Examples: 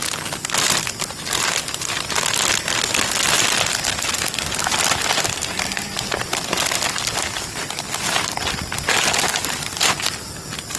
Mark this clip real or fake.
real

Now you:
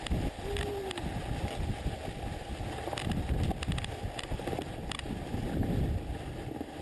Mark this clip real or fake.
real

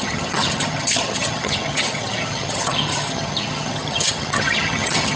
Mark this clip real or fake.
fake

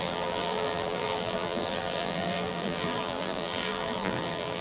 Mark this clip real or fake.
fake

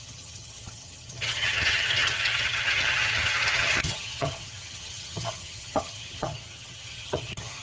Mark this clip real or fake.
fake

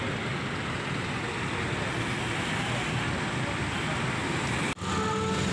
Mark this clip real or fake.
real